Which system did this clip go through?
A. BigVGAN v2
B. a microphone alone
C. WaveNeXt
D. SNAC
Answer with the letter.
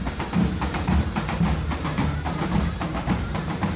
A